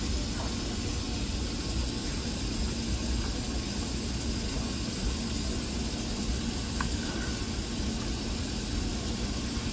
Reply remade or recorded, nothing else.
recorded